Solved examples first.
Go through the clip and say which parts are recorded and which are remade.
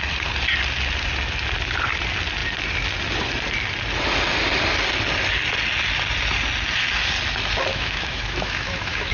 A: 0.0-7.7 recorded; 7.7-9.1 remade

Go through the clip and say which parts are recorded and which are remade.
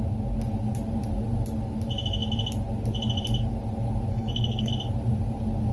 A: 0.0-4.1 recorded; 4.1-4.7 remade; 4.7-5.7 recorded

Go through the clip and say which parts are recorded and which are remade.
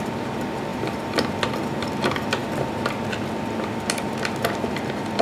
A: 0.0-0.7 recorded; 0.7-1.7 remade; 1.7-5.2 recorded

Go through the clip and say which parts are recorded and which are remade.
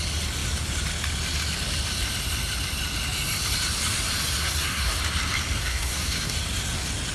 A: 0.0-4.4 recorded; 4.4-5.0 remade; 5.0-5.6 recorded; 5.6-6.3 remade; 6.3-7.1 recorded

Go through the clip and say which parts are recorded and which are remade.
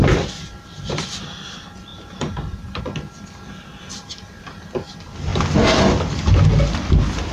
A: 0.0-1.9 recorded; 1.9-2.8 remade; 2.8-7.3 recorded